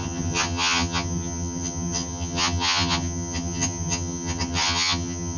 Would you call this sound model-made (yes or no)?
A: yes